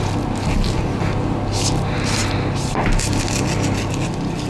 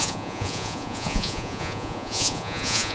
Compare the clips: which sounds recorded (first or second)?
first